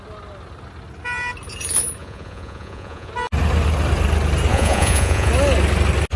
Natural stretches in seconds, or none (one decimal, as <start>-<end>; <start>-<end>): 0.0-2.0; 3.1-4.5; 5.3-6.2